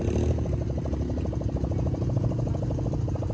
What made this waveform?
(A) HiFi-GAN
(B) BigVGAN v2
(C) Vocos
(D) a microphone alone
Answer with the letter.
D